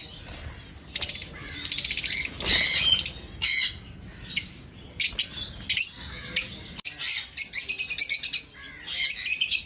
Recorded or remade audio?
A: recorded